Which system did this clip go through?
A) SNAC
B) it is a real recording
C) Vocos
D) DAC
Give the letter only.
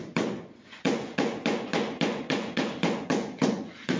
C